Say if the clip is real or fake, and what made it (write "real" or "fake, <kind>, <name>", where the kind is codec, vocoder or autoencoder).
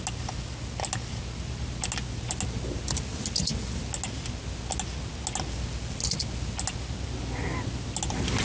real